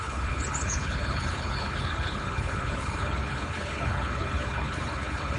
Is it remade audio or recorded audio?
remade